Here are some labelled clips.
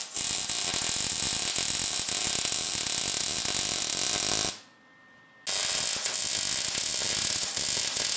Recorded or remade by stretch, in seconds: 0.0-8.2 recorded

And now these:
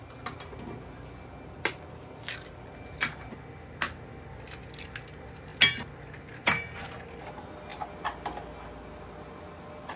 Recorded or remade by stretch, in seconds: 0.0-10.0 recorded

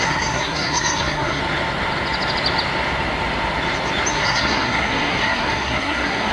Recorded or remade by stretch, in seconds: 0.0-1.4 remade; 1.4-4.1 recorded; 4.1-6.3 remade